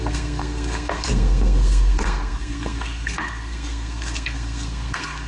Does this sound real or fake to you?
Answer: fake